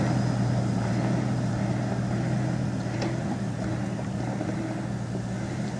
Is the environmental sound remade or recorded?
recorded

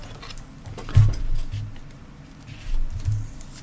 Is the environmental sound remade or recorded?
recorded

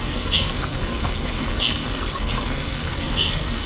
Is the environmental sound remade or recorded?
remade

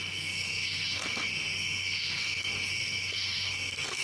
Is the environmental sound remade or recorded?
remade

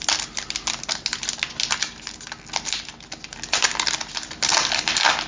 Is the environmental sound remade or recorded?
recorded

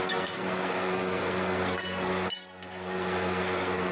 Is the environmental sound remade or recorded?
remade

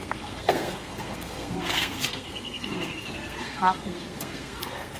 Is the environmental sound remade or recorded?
remade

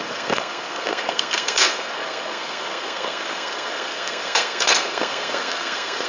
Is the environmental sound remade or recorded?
remade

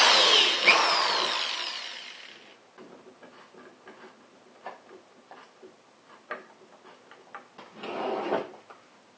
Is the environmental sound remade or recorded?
recorded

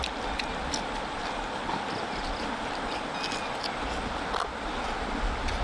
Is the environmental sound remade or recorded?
recorded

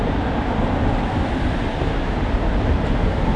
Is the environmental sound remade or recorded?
recorded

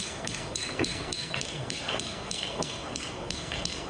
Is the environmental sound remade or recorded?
remade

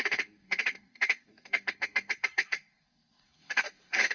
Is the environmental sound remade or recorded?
remade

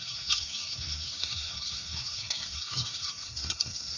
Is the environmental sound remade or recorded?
remade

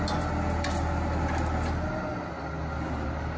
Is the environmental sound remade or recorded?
recorded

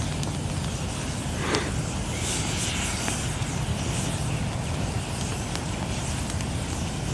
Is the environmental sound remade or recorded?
recorded